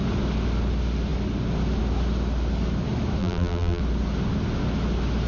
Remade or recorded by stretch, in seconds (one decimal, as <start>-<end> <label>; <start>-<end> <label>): 0.0-3.2 recorded; 3.2-3.8 remade; 3.8-5.3 recorded